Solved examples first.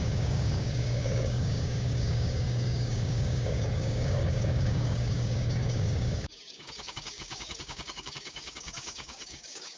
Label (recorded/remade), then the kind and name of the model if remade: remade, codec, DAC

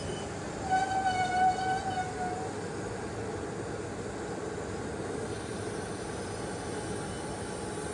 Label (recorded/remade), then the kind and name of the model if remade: recorded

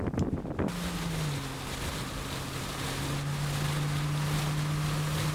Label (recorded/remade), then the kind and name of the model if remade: recorded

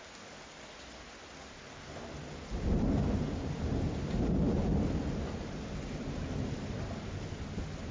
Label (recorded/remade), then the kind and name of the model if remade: recorded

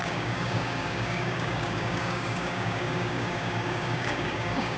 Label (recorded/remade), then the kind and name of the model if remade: remade, codec, DAC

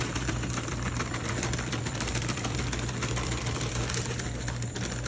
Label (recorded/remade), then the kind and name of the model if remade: remade, vocoder, BigVGAN v2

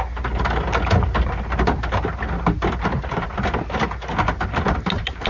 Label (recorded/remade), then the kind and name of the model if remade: recorded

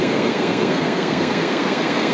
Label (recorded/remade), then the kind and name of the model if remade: remade, codec, SNAC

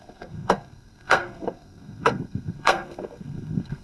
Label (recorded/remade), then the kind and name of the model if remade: remade, codec, SNAC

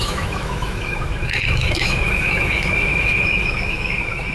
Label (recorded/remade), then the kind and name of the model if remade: remade, autoencoder, DAC-VAE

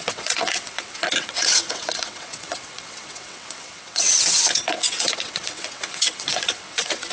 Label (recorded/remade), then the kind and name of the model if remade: remade, vocoder, WaveNeXt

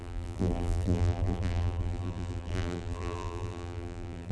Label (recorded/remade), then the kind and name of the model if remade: remade, vocoder, BigVGAN v2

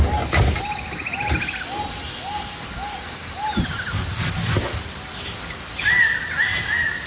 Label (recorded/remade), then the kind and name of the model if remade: recorded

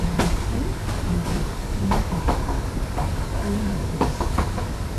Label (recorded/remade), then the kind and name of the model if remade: remade, codec, DAC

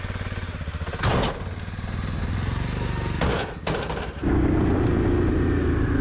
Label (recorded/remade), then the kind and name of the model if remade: recorded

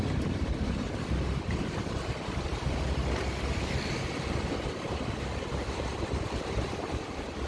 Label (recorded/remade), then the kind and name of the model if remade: recorded